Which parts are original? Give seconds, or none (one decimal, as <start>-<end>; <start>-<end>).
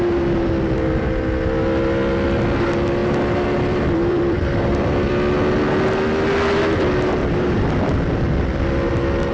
0.0-3.0; 5.1-7.2; 8.9-9.3